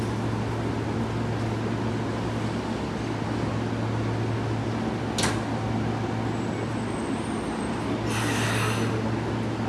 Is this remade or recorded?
recorded